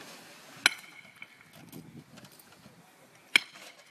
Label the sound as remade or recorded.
recorded